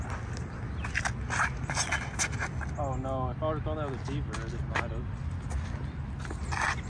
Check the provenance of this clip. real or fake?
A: real